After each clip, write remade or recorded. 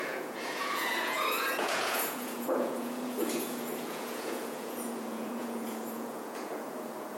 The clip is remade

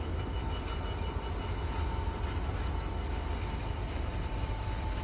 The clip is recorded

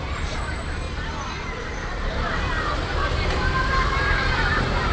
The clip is remade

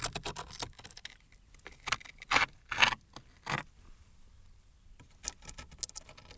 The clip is recorded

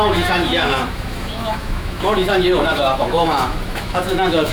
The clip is remade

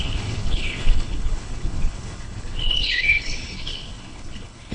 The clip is remade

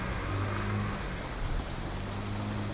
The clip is recorded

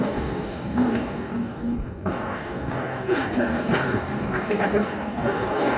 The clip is remade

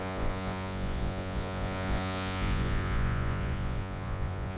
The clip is remade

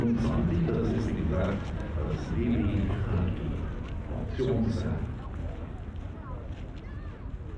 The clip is recorded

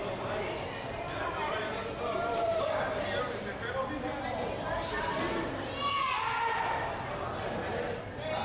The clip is recorded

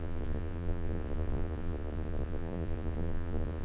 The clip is remade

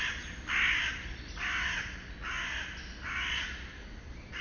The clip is recorded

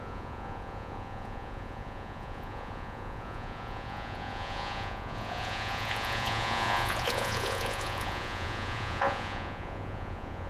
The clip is remade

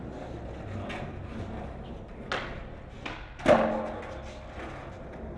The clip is recorded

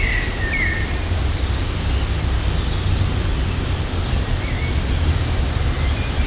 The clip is recorded